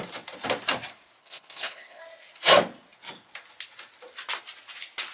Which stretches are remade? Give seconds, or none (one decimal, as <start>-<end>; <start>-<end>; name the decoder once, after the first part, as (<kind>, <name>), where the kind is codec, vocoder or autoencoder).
1.2-2.0 (codec, HILCodec)